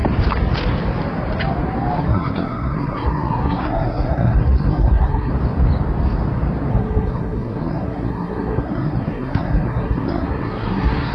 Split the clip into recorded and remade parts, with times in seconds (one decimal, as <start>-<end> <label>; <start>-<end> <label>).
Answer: 0.0-2.0 recorded; 2.0-5.3 remade; 5.3-6.7 recorded; 6.7-11.1 remade